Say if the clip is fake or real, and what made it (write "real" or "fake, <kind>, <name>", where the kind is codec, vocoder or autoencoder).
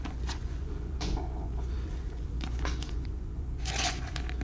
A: fake, vocoder, Vocos